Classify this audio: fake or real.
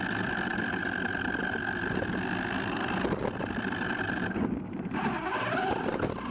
fake